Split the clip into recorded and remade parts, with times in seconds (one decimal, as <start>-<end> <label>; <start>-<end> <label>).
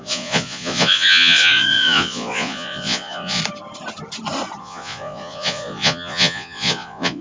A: 0.0-3.4 remade; 3.4-4.6 recorded; 4.6-7.2 remade